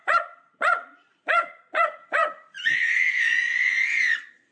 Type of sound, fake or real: fake